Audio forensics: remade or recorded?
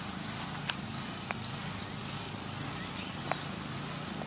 recorded